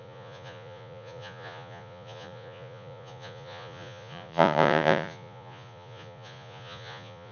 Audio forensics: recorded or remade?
remade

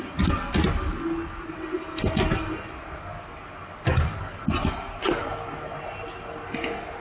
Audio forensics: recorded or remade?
recorded